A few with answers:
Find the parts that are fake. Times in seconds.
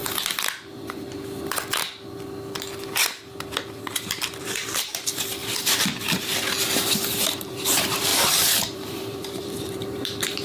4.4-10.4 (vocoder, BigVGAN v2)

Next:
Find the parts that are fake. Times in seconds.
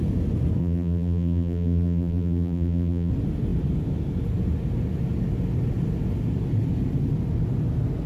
0.6-3.1 (vocoder, BigVGAN v2)